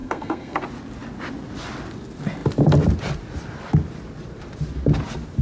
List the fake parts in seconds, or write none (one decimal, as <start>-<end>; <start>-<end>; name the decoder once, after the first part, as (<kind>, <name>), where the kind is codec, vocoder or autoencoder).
0.0-0.6 (codec, SNAC)